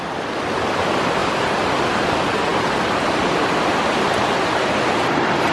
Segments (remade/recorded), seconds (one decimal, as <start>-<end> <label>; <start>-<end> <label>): 0.0-5.5 recorded